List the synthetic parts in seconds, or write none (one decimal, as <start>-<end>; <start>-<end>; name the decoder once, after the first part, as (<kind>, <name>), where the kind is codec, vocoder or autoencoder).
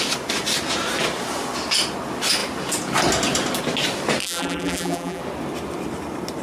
4.2-5.2 (vocoder, BigVGAN v2)